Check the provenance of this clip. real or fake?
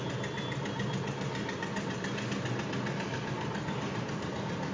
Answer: real